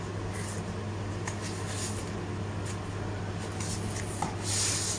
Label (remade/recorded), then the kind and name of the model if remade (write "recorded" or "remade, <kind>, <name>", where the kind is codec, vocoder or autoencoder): recorded